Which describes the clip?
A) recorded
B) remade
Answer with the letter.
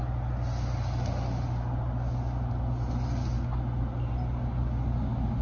A